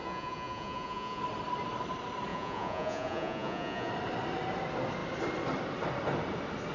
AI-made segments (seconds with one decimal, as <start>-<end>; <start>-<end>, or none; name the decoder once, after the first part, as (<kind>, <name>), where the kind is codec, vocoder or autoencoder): 0.0-1.2 (vocoder, Vocos); 2.3-3.9